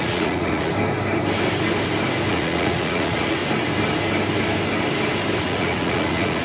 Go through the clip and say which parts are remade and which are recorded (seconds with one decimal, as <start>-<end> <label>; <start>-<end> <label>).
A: 0.0-0.7 remade; 0.7-2.3 recorded; 2.3-3.4 remade; 3.4-5.4 recorded; 5.4-6.4 remade